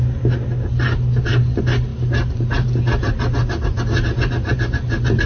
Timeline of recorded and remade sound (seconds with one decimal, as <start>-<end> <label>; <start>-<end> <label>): 0.0-5.3 recorded